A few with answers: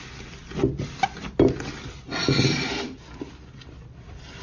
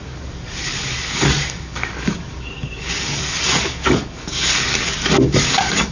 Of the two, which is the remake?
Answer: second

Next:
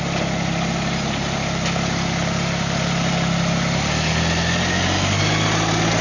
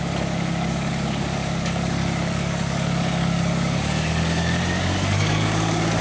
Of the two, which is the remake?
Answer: second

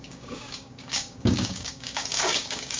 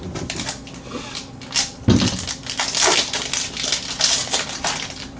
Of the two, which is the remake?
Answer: first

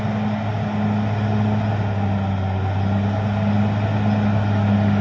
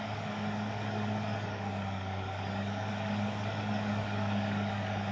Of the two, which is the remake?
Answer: second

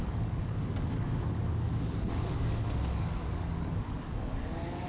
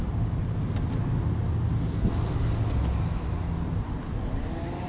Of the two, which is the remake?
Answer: first